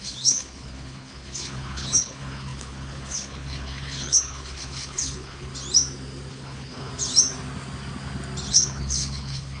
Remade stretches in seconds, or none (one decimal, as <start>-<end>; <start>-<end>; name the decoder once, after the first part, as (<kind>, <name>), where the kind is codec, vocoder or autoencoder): 0.0-5.5 (codec, HILCodec); 6.3-6.9; 8.5-9.6